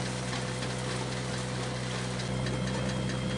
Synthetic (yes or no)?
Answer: no